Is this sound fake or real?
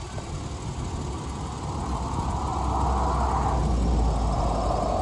real